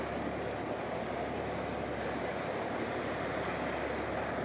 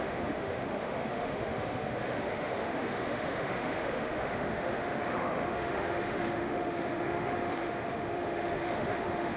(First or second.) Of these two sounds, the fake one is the second